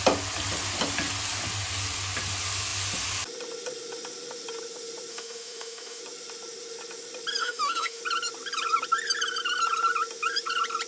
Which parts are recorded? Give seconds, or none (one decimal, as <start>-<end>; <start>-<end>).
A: 0.0-5.1; 6.0-7.4; 8.0-10.9